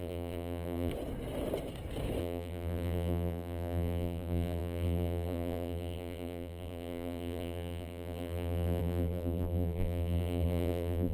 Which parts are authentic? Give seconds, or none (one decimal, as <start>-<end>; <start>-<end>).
0.9-2.2

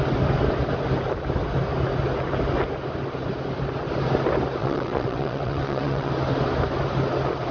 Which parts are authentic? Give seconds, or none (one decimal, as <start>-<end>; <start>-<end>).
0.0-4.6; 6.1-7.5